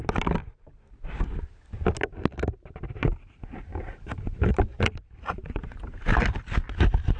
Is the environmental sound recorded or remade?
recorded